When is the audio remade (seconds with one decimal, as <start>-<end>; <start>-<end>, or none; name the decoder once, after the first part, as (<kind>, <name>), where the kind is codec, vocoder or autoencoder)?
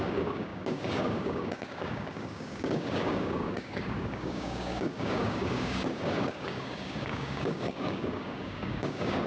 0.0-9.3 (codec, DAC)